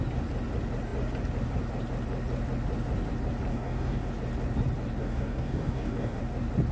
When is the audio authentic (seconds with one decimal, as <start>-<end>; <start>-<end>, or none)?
0.0-3.5; 4.1-5.0; 6.2-6.7